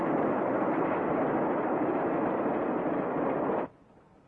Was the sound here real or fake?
real